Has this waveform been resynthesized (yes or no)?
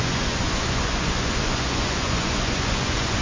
yes